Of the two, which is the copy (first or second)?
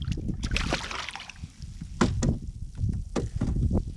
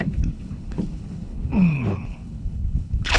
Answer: second